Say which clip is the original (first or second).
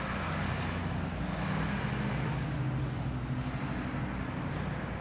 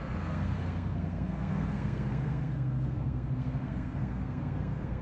first